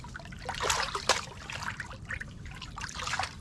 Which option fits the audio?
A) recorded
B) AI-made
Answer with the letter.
A